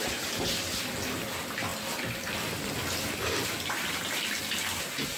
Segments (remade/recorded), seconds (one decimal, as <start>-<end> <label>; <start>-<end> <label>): 0.0-5.2 recorded